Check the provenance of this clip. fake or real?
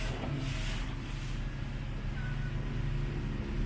real